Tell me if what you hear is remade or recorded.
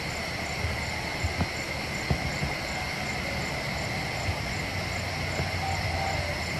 recorded